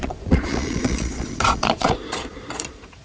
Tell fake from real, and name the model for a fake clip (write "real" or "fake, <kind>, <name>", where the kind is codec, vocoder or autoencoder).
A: fake, vocoder, Vocos